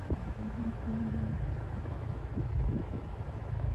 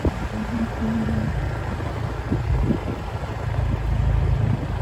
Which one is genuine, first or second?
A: second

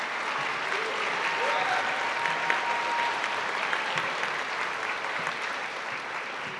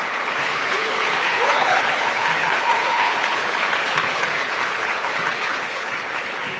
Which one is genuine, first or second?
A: first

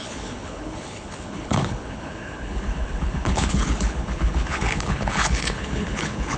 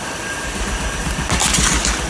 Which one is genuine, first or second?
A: second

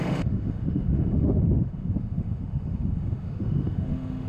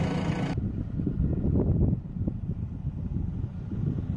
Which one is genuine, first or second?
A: second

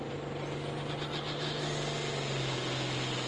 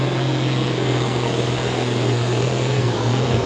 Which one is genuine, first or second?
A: first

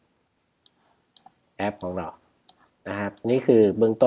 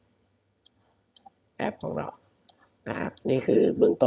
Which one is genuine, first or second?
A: first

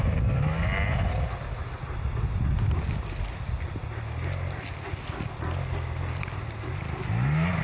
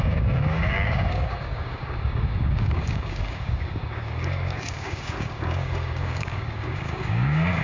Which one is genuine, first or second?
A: first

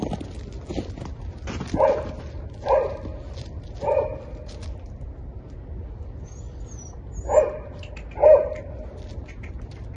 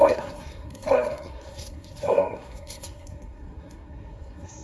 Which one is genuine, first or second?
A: first